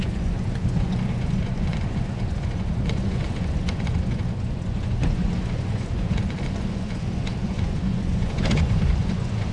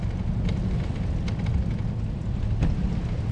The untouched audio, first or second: second